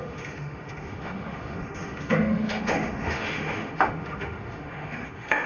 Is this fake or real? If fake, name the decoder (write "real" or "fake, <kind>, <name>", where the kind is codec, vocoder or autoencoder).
fake, autoencoder, DAC-VAE